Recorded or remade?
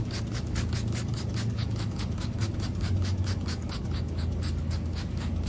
remade